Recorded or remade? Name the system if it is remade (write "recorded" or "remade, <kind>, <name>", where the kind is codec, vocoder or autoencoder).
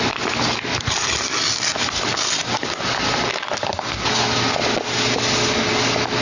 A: recorded